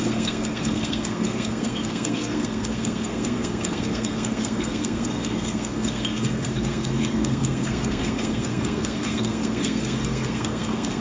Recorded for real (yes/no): no